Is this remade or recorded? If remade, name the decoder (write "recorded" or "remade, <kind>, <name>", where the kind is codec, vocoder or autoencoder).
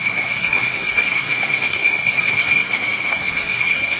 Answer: remade, codec, SNAC